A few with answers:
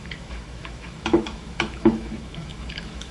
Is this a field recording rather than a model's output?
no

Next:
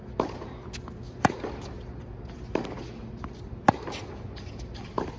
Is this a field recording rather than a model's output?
yes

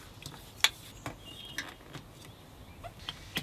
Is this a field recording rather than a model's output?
yes